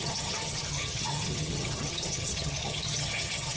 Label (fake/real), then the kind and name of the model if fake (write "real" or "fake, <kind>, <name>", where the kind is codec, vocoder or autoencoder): fake, vocoder, HiFi-GAN